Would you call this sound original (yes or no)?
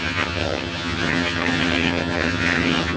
no